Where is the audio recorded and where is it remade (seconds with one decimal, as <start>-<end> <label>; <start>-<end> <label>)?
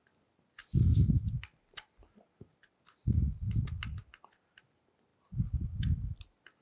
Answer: 0.0-6.6 recorded